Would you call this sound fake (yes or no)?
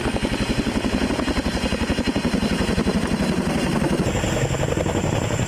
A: no